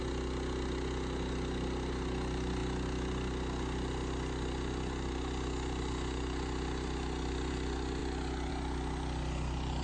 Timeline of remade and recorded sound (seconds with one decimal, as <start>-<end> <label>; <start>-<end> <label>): 0.0-9.8 recorded